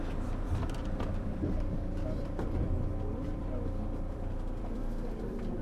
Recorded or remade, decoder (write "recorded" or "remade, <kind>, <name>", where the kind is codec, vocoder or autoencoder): remade, vocoder, BigVGAN v2